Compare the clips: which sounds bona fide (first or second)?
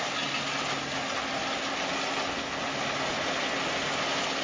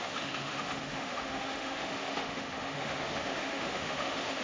first